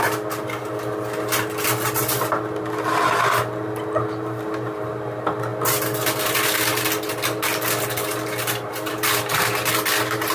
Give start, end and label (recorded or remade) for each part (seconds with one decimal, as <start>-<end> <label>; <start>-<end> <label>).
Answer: 0.0-10.3 recorded